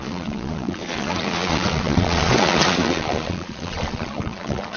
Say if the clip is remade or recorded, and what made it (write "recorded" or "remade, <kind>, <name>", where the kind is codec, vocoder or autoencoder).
remade, vocoder, Vocos